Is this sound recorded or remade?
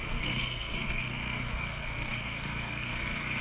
remade